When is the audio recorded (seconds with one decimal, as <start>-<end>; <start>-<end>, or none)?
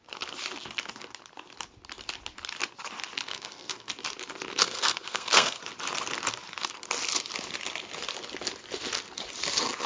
0.0-3.3; 3.9-4.6; 5.6-9.9